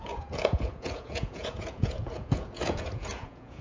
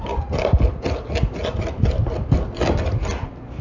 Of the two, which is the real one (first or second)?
second